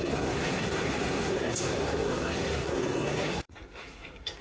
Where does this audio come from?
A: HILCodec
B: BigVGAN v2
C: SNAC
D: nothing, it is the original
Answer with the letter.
C